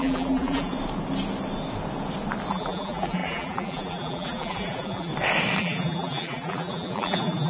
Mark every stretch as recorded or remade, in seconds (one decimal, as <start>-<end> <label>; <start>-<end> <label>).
0.0-0.7 remade; 0.7-2.5 recorded; 2.5-5.1 remade; 5.1-5.6 recorded; 5.6-7.5 remade